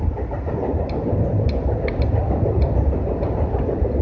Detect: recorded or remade recorded